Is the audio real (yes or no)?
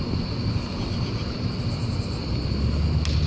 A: yes